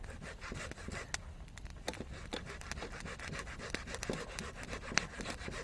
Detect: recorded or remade recorded